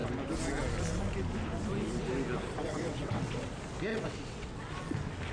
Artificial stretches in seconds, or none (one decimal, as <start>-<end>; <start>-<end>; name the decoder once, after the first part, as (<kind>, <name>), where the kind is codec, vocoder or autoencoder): 2.6-3.5 (vocoder, WaveNeXt); 3.9-4.7